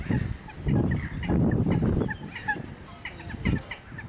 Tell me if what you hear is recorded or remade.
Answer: recorded